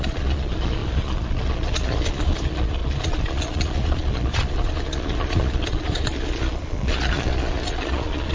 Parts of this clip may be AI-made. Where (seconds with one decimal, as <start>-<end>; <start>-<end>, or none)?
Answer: 0.0-8.3